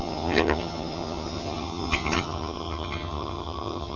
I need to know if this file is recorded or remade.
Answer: remade